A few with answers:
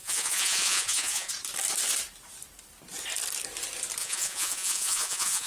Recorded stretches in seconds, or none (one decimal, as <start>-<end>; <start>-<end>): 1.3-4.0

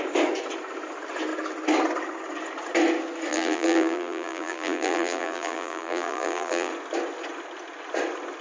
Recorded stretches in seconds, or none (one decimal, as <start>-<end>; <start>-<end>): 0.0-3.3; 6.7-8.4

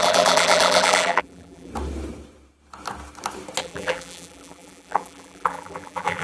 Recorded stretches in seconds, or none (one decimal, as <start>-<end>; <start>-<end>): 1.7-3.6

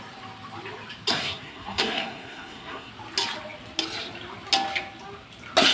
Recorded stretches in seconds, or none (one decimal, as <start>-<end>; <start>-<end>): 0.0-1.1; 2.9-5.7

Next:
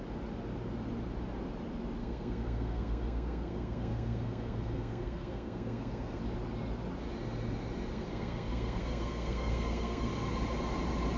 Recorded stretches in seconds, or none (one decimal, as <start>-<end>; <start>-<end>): 0.0-2.0; 6.2-7.9; 10.1-11.2

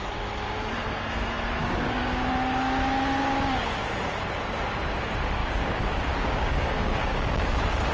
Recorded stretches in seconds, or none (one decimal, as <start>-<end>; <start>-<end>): 0.0-1.6; 2.3-3.2; 3.8-5.4